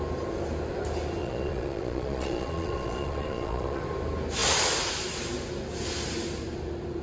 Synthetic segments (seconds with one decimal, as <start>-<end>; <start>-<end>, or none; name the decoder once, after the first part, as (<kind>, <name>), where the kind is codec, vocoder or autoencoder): 1.2-3.8 (vocoder, Vocos)